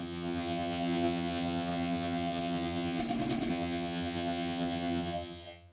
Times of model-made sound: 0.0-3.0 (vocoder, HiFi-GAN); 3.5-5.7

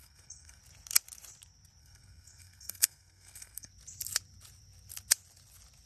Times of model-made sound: 0.0-0.6 (codec, SNAC); 1.8-3.7

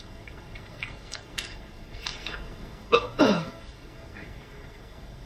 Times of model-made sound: 0.0-5.3 (codec, SNAC)